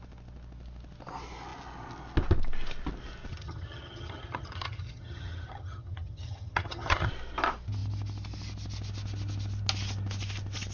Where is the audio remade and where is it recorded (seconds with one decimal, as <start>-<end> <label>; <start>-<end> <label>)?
0.0-3.3 recorded; 3.3-7.1 remade; 7.1-10.7 recorded

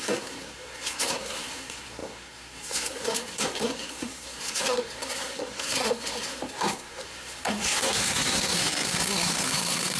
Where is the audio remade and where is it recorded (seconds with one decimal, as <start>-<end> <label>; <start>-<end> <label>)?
0.0-10.0 remade

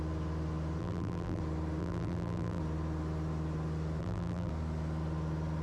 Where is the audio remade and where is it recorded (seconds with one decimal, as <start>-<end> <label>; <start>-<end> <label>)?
0.0-0.8 recorded; 0.8-1.4 remade; 1.4-1.8 recorded; 1.8-2.6 remade; 2.6-4.0 recorded; 4.0-4.5 remade; 4.5-5.6 recorded

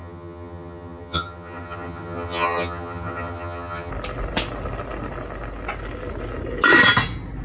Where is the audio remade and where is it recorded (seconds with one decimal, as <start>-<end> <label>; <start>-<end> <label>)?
0.0-3.9 remade; 3.9-7.4 recorded

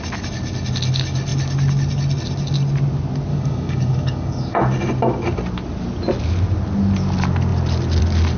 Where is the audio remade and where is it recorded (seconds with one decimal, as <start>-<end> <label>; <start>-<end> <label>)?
0.0-3.3 recorded; 3.3-4.6 remade; 4.6-8.4 recorded

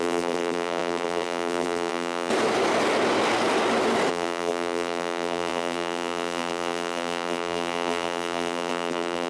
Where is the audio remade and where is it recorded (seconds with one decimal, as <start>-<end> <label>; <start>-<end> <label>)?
0.0-2.3 remade; 2.3-4.1 recorded; 4.1-9.3 remade